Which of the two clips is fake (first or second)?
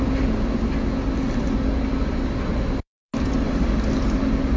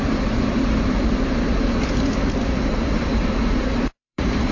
second